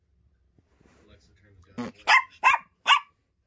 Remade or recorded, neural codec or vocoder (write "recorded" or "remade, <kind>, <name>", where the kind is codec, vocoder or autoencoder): recorded